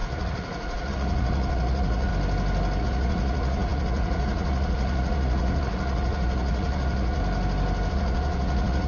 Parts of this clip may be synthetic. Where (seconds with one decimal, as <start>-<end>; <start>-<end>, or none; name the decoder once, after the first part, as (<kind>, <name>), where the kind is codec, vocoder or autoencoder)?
0.0-2.1 (vocoder, Vocos); 2.8-7.2; 7.9-8.9